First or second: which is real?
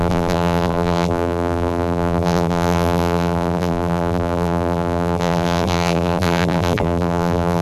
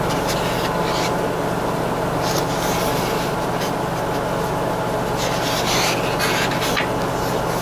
second